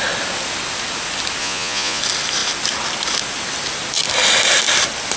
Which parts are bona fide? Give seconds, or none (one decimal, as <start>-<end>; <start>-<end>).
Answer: 0.0-1.4; 2.0-5.2